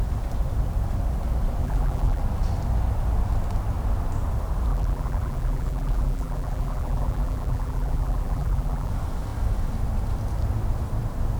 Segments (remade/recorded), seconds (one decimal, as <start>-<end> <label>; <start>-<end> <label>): 0.0-1.6 recorded; 1.6-2.2 remade; 2.2-4.7 recorded; 4.7-8.9 remade; 8.9-11.4 recorded